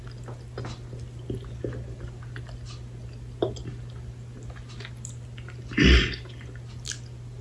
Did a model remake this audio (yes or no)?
no